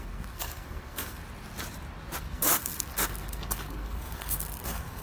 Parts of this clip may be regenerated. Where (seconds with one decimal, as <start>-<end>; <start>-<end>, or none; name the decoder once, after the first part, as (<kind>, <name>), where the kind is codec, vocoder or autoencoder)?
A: 0.0-1.2 (codec, SNAC); 2.2-5.0